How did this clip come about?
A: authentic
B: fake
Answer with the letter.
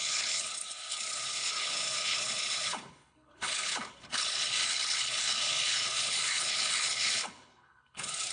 B